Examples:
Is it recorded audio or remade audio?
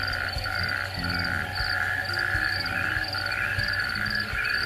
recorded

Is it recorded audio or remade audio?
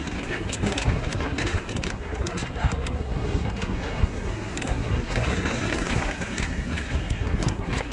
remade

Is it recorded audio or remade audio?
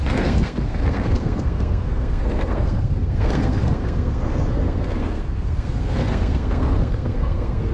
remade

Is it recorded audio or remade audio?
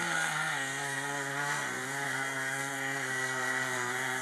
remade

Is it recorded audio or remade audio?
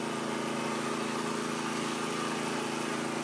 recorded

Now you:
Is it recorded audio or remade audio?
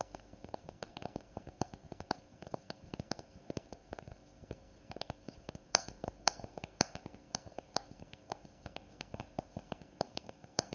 remade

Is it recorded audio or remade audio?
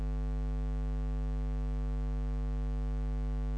recorded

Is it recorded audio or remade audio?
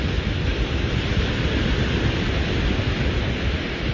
recorded